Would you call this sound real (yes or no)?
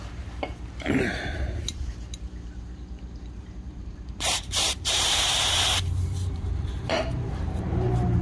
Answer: no